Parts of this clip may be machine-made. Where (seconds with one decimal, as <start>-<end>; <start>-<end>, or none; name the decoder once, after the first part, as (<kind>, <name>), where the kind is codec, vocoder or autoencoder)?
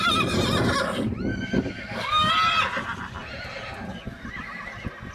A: 1.3-2.3 (codec, DAC)